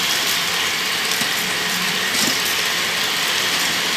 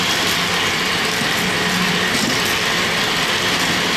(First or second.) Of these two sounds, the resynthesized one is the first